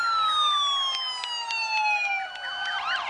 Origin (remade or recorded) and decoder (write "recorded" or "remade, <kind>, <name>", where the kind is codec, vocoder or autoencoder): recorded